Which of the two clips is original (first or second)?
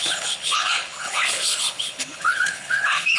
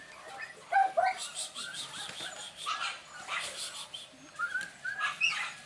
second